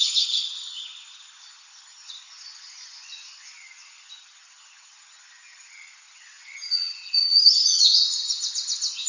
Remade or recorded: remade